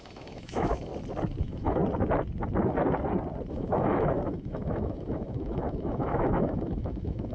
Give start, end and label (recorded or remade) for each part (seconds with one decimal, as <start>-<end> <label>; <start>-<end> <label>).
0.0-0.9 remade; 0.9-1.4 recorded; 1.4-1.8 remade; 1.8-3.5 recorded; 3.5-7.3 remade